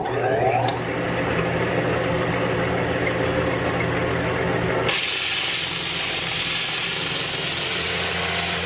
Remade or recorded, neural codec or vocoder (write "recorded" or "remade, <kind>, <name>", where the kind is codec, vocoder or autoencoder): recorded